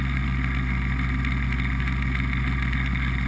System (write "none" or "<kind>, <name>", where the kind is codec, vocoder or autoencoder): none